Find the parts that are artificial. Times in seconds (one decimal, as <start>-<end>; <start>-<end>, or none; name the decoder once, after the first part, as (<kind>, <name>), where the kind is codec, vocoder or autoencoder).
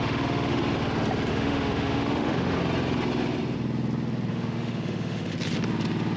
0.0-0.6 (autoencoder, DAC-VAE); 1.3-2.6; 4.3-5.3